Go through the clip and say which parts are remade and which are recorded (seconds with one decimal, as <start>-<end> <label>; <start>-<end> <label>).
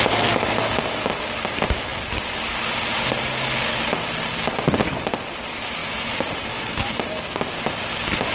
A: 0.0-8.3 recorded